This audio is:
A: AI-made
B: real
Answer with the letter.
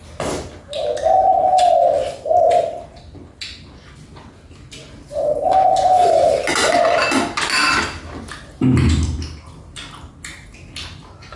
B